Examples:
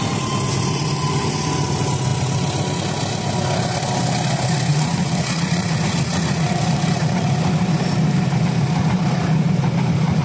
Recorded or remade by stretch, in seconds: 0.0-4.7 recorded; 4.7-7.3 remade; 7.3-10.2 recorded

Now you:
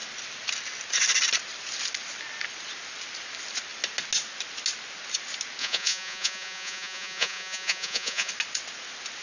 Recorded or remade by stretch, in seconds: 0.0-5.6 recorded; 5.6-8.3 remade; 8.3-9.2 recorded

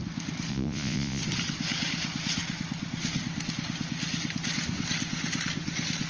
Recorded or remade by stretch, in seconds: 0.0-0.5 recorded; 0.5-1.2 remade; 1.2-6.1 recorded

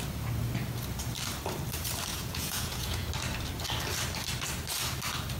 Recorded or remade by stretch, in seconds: 0.0-2.1 recorded; 2.1-3.1 remade; 3.1-5.4 recorded

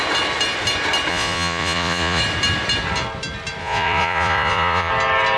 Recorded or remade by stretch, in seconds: 0.0-1.1 recorded; 1.1-2.2 remade; 2.2-3.6 recorded; 3.6-4.9 remade; 4.9-5.4 recorded

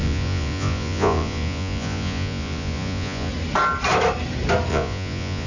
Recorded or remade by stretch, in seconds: 0.0-3.3 remade; 3.3-4.7 recorded; 4.7-5.5 remade

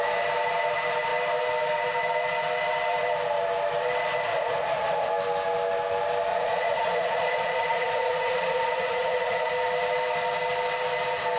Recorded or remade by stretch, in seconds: 0.0-4.3 recorded; 4.3-5.1 remade; 5.1-6.3 recorded; 6.3-9.5 remade; 9.5-11.4 recorded

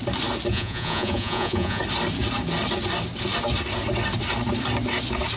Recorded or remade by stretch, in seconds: 0.0-0.5 recorded; 0.5-1.8 remade; 1.8-5.4 recorded